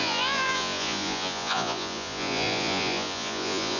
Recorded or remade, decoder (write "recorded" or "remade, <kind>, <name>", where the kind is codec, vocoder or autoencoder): remade, vocoder, Vocos